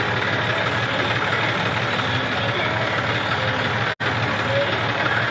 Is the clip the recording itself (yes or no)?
yes